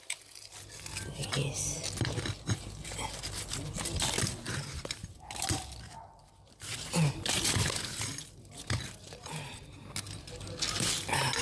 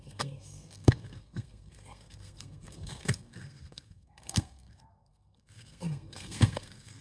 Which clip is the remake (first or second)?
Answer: second